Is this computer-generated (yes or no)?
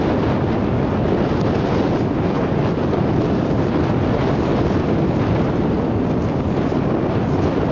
no